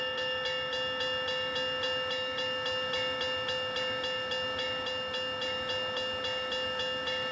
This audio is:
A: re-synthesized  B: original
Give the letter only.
B